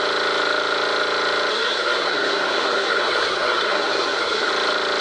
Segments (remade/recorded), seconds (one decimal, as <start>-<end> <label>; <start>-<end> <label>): 0.0-1.5 recorded; 1.5-4.5 remade; 4.5-5.0 recorded